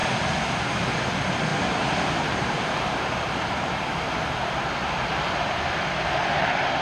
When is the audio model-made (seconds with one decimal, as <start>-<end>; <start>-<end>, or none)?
0.6-6.8